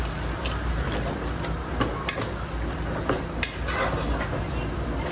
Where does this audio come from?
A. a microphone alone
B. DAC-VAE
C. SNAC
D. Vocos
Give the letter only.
A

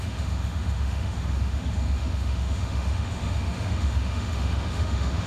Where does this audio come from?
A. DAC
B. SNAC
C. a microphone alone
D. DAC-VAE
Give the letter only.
D